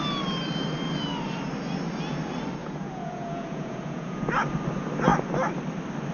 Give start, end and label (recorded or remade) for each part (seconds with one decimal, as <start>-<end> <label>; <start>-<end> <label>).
0.0-2.6 recorded; 2.6-4.2 remade; 4.2-6.1 recorded